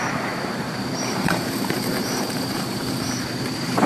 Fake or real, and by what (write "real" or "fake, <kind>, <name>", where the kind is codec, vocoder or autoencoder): fake, vocoder, BigVGAN v2